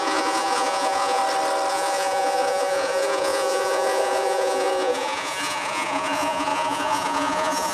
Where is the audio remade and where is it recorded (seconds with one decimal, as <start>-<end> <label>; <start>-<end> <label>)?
0.0-1.2 remade; 1.2-1.7 recorded; 1.7-7.7 remade